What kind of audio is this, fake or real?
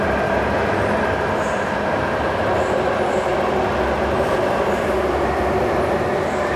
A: real